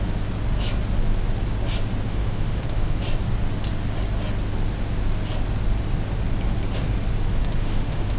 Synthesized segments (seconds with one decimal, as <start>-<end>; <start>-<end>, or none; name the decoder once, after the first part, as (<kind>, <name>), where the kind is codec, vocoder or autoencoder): 2.1-3.0 (autoencoder, DAC-VAE); 7.3-8.2